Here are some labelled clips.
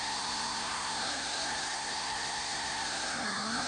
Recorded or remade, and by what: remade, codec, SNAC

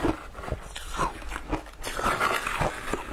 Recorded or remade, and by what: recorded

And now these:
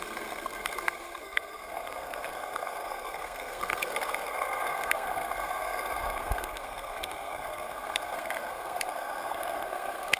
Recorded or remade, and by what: remade, codec, SNAC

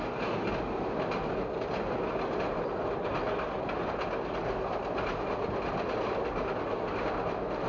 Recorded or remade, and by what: recorded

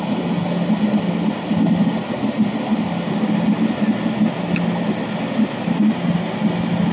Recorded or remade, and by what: recorded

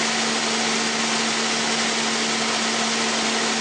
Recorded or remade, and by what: recorded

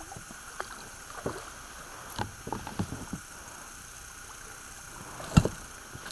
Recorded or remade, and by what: recorded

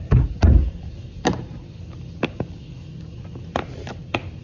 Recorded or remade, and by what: recorded